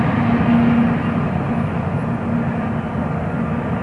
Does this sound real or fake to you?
real